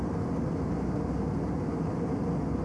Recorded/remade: recorded